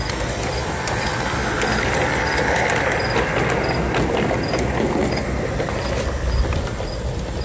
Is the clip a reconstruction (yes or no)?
no